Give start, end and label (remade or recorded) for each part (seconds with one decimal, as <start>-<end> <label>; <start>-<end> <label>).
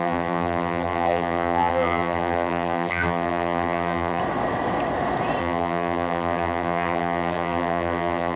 0.0-4.2 remade; 4.2-5.4 recorded; 5.4-8.4 remade